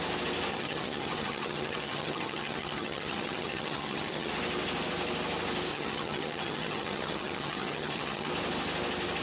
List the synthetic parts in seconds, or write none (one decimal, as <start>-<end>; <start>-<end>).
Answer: 0.5-4.3; 5.7-8.3